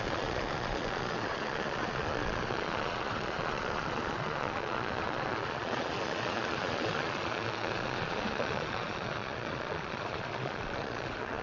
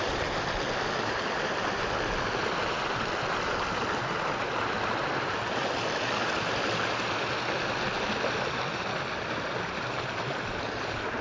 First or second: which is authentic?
second